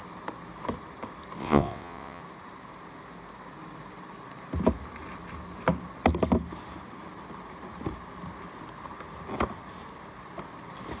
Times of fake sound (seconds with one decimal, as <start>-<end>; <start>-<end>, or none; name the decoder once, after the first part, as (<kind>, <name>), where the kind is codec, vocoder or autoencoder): 1.4-2.2 (vocoder, WaveNeXt)